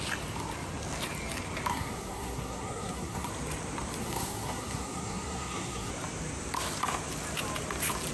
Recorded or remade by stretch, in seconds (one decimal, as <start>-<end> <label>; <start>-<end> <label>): 0.0-1.7 recorded; 1.7-3.3 remade; 3.3-4.0 recorded; 4.0-5.9 remade; 5.9-8.1 recorded